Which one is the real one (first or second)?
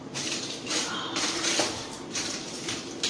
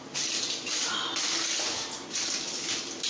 second